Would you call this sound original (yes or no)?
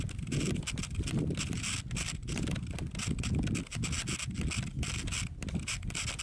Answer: yes